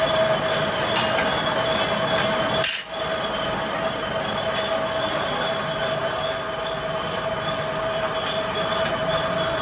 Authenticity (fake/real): real